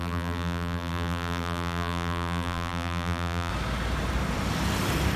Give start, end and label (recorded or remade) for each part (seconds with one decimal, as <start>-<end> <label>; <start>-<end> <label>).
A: 0.0-3.5 remade; 3.5-5.2 recorded